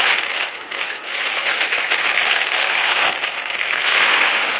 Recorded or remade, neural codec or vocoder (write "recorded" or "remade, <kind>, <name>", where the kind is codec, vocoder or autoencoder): remade, autoencoder, DAC-VAE